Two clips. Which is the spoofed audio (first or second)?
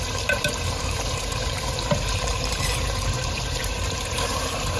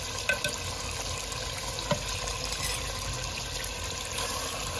first